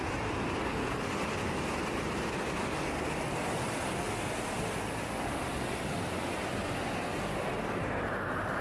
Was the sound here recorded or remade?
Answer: recorded